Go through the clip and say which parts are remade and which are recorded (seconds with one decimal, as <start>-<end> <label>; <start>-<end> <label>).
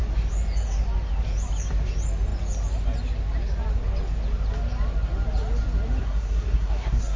0.0-6.0 recorded; 6.0-7.2 remade